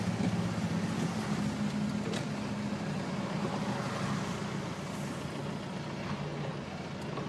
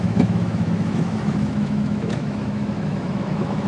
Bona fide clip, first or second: first